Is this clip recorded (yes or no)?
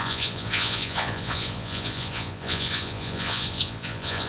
no